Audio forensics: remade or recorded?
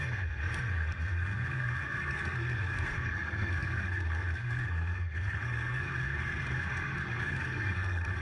remade